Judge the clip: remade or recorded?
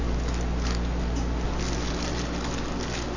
recorded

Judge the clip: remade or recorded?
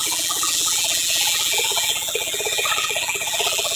remade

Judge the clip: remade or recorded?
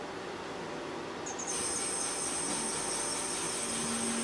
recorded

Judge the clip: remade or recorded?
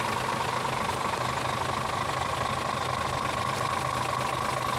recorded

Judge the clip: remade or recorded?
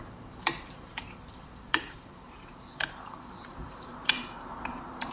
remade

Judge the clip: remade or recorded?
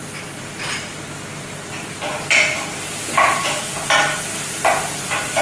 recorded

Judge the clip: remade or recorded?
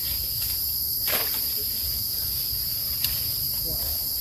remade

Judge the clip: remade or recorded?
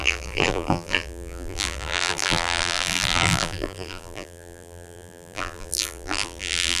remade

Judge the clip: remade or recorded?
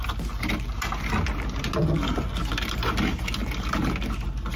recorded